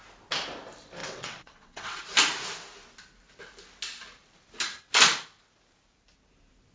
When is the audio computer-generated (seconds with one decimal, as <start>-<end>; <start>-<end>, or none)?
1.0-2.0